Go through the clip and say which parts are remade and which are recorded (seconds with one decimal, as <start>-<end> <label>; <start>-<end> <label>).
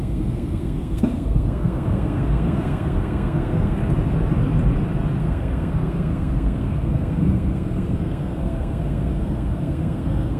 0.0-3.8 remade; 3.8-5.2 recorded; 5.2-10.4 remade